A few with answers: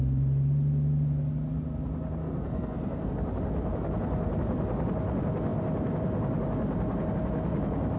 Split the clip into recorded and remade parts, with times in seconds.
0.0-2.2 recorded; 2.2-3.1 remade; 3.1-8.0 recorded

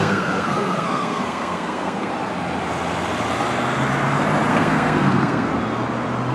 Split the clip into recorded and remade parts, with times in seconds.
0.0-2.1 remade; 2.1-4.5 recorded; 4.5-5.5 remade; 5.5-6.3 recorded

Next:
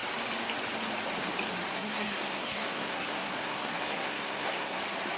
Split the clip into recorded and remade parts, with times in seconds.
0.0-1.7 recorded; 1.7-4.8 remade; 4.8-5.2 recorded

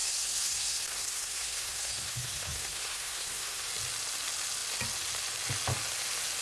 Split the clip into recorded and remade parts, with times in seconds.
0.0-3.7 remade; 3.7-6.4 recorded

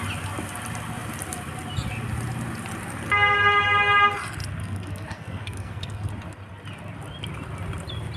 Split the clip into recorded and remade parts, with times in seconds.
0.0-4.6 recorded; 4.6-6.1 remade; 6.1-8.2 recorded